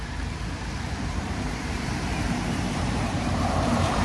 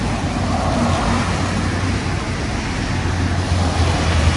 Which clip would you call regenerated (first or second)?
first